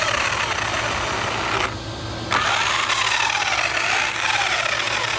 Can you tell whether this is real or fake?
real